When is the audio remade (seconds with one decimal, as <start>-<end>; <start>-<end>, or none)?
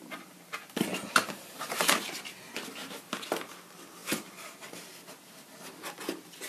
0.9-2.1; 4.0-5.3